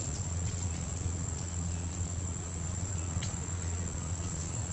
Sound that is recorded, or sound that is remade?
remade